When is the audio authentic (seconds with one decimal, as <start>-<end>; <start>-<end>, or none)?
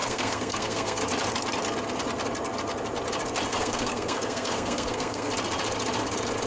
1.0-3.5; 5.3-6.5